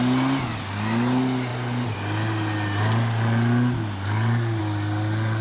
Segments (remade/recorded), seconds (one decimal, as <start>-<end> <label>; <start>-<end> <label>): 0.0-5.4 recorded